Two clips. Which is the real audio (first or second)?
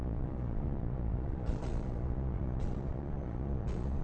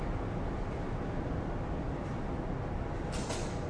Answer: second